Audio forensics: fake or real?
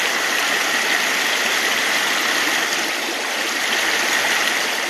real